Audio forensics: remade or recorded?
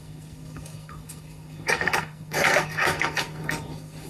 remade